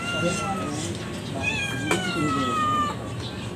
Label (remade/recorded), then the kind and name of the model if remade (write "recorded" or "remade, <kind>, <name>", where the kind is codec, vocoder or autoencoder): remade, vocoder, BigVGAN v2